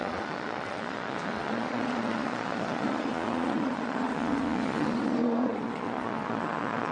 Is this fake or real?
fake